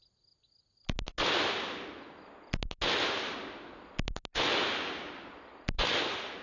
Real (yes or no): yes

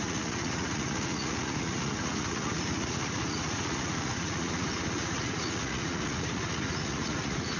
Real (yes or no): no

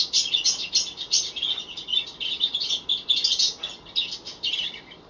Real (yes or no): yes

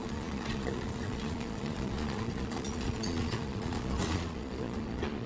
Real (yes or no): no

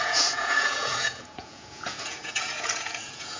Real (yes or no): no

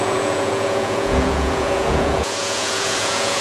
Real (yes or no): no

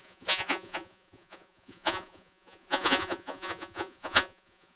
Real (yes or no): no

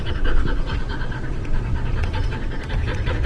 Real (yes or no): no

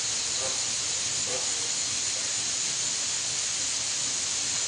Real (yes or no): yes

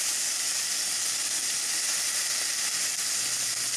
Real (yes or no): yes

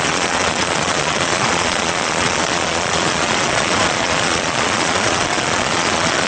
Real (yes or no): no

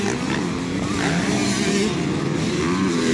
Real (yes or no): yes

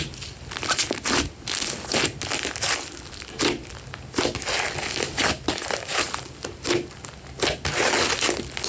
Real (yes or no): yes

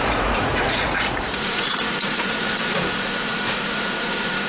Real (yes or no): no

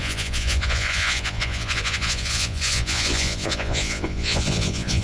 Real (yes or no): no